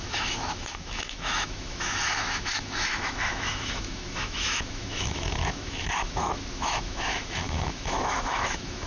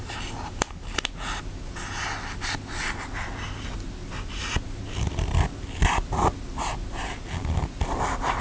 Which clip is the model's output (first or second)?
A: first